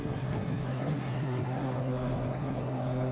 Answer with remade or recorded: remade